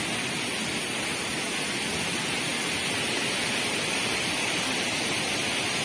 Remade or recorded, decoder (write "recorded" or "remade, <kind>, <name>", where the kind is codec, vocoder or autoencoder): recorded